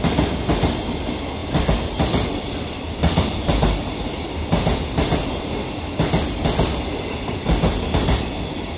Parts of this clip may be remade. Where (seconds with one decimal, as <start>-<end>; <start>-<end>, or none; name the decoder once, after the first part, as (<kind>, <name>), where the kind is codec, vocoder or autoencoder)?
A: 1.4-5.3 (vocoder, BigVGAN v2)